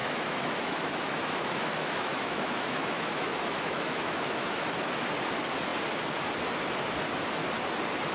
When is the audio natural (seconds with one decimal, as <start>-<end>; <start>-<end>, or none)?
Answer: 4.9-8.1